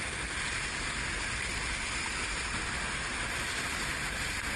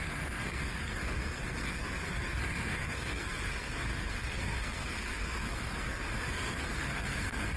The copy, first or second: second